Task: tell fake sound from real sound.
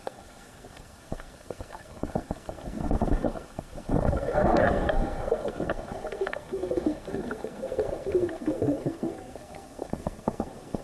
fake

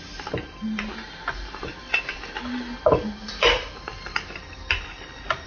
real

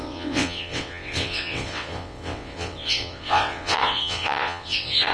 fake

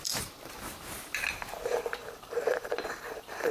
fake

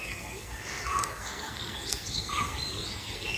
fake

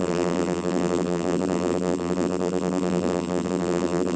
fake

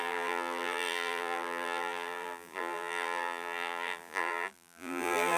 fake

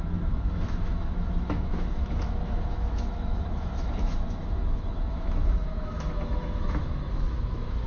fake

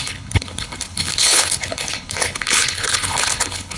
fake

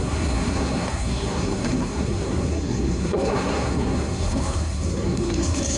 fake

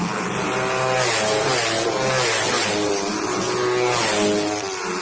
real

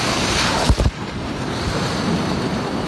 fake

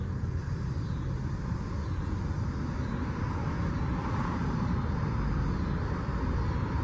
real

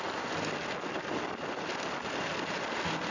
real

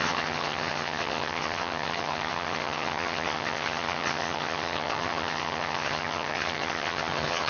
fake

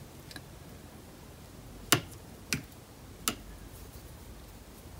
real